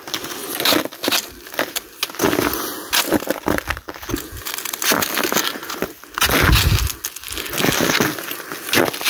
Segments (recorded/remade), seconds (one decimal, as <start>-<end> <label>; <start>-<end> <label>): 0.0-9.1 recorded